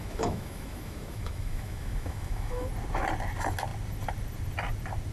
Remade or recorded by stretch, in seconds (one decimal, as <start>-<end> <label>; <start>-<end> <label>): 0.0-2.7 remade; 2.7-5.1 recorded